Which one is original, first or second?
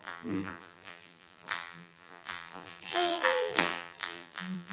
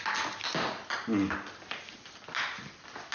second